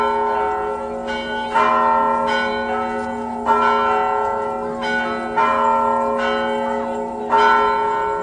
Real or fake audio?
real